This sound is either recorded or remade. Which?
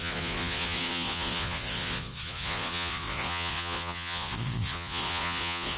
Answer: remade